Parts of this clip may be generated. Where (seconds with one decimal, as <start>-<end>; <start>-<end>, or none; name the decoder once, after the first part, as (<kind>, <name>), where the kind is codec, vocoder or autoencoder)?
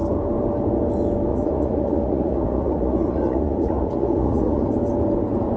1.3-4.7 (vocoder, Vocos)